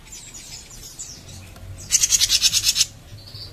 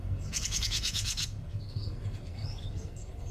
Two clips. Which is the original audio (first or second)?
first